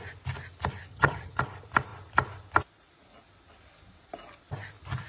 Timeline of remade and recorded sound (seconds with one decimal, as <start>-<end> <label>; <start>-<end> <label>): 0.0-0.9 recorded; 0.9-1.4 remade; 1.4-5.1 recorded